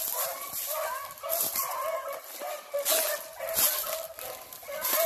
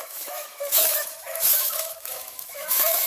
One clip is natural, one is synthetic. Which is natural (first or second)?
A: first